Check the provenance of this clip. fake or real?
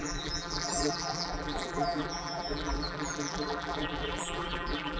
fake